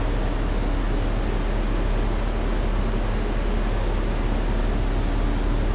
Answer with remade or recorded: recorded